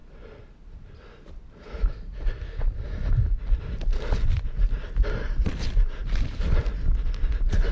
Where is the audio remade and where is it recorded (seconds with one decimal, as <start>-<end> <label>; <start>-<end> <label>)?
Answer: 0.0-7.7 recorded